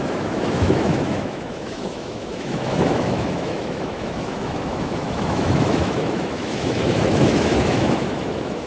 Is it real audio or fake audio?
fake